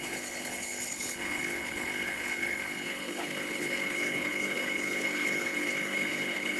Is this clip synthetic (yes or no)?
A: yes